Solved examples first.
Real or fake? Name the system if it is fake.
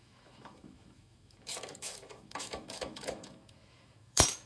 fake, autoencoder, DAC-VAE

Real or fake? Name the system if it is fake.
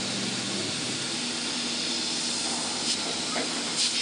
real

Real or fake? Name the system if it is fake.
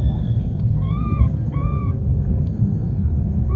fake, codec, SNAC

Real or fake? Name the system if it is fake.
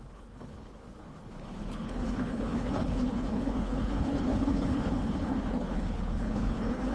fake, codec, HILCodec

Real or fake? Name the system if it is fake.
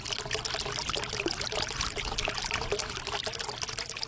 real